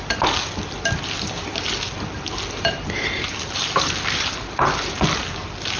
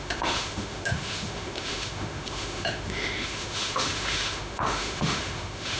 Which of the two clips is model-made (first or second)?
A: second